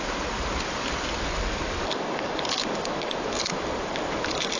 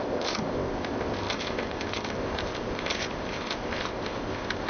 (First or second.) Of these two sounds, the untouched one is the first